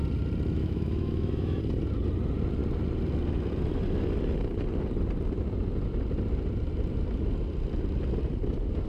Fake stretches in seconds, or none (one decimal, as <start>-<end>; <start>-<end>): 0.6-1.6